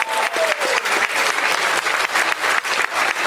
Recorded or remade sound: remade